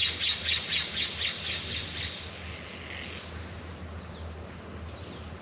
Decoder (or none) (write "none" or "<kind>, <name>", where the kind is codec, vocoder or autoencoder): none